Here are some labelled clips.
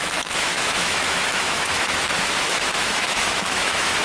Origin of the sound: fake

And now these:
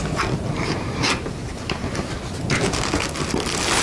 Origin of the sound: real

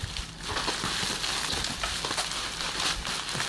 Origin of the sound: fake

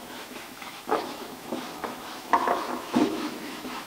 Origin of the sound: fake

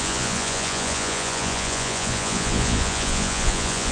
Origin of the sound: fake